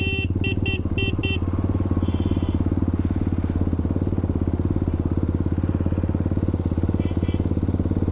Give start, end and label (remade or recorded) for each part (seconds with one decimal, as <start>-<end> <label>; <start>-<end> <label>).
0.0-8.1 recorded